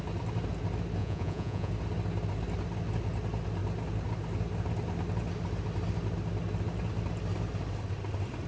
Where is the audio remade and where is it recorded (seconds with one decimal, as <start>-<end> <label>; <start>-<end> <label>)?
0.0-1.0 recorded; 1.0-1.7 remade; 1.7-8.5 recorded